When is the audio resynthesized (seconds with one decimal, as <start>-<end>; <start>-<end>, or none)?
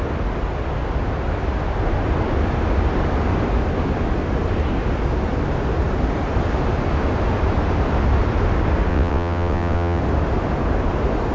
8.9-10.0